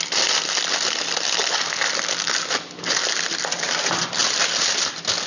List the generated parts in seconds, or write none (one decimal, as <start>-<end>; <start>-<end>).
none